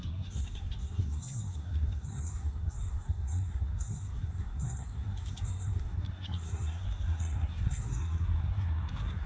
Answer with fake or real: fake